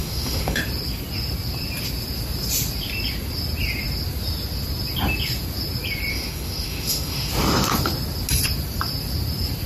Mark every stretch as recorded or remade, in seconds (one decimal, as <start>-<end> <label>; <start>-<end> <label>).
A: 0.0-0.6 remade; 0.6-6.1 recorded; 6.1-7.3 remade; 7.3-9.7 recorded